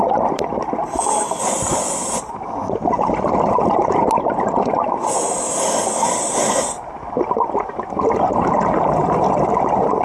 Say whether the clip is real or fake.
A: real